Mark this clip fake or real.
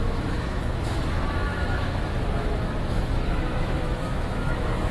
fake